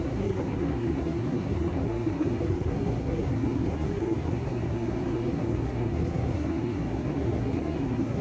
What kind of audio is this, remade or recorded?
remade